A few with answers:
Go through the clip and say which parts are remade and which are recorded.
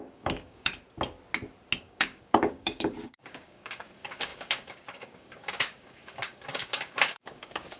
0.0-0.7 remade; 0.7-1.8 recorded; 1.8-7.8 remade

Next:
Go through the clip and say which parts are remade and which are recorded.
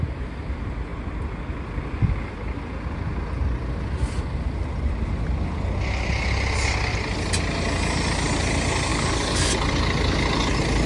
0.0-8.9 recorded; 8.9-9.5 remade; 9.5-10.9 recorded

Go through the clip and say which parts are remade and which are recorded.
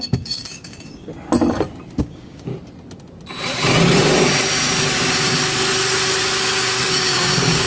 0.0-1.1 remade; 1.1-2.0 recorded; 2.0-2.5 remade; 2.5-6.8 recorded; 6.8-7.7 remade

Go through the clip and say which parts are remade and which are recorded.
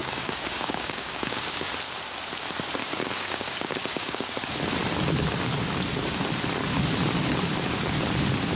0.0-1.7 remade; 1.7-2.8 recorded; 2.8-4.3 remade; 4.3-8.6 recorded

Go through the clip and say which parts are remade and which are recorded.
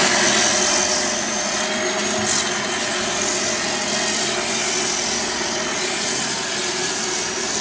0.0-7.6 recorded